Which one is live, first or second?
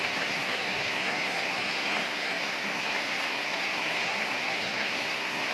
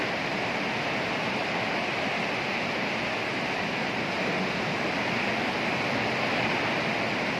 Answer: second